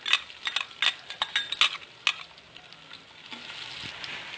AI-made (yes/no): no